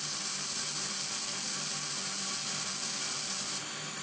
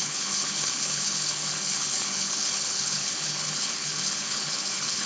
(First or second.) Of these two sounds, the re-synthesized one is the second